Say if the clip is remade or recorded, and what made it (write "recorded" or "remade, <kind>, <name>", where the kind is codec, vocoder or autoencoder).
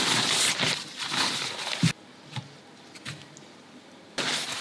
recorded